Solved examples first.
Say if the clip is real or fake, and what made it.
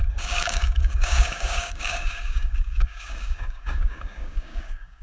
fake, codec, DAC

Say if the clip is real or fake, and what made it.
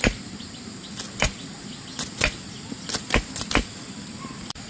real